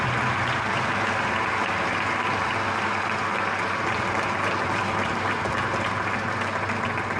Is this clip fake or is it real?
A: real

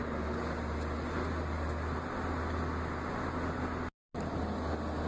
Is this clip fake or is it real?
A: real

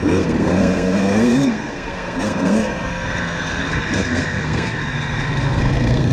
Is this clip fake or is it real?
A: fake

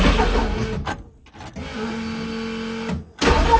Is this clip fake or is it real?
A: real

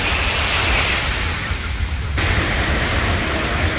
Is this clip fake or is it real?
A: real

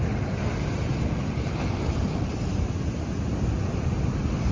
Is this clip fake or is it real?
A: real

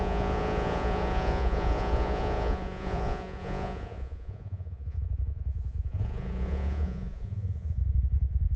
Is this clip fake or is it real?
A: fake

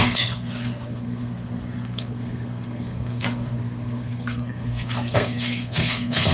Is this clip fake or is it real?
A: fake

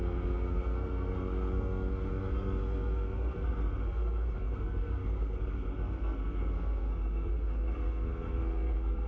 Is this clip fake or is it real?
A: fake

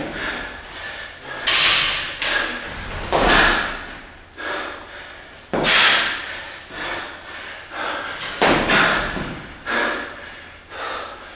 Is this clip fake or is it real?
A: real